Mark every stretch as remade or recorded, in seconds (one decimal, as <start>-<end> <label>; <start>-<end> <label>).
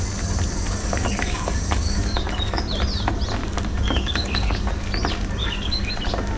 0.0-0.8 recorded; 0.8-2.6 remade; 2.6-3.4 recorded; 3.4-4.7 remade; 4.7-5.4 recorded; 5.4-5.9 remade; 5.9-6.4 recorded